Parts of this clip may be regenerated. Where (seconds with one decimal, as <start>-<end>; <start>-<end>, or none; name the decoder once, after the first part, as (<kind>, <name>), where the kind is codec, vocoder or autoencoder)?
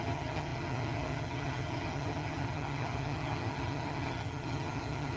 0.0-5.2 (vocoder, HiFi-GAN)